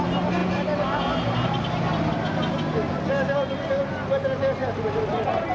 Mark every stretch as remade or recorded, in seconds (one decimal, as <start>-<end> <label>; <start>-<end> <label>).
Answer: 0.0-5.5 recorded